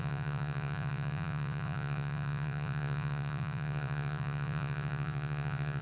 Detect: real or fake fake